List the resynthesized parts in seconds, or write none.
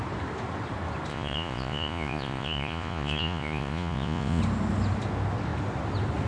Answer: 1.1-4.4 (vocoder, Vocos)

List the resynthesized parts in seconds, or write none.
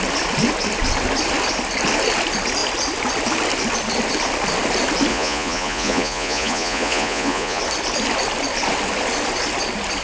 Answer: 5.1-7.6 (vocoder, Vocos)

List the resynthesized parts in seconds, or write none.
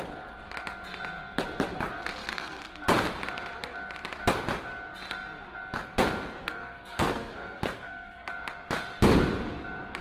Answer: 2.2-2.7 (codec, SNAC); 6.4-8.3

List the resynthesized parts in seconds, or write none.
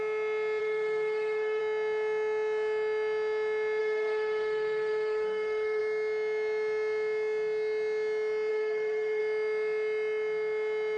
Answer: 0.6-1.6 (codec, SNAC); 3.8-5.8; 8.5-9.2